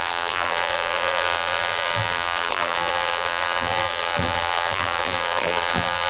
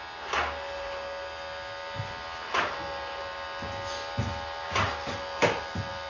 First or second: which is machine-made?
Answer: first